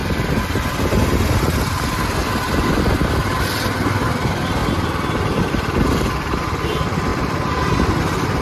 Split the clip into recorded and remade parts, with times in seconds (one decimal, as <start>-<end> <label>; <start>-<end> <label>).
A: 0.0-4.6 recorded; 4.6-6.0 remade; 6.0-7.1 recorded; 7.1-7.7 remade; 7.7-8.4 recorded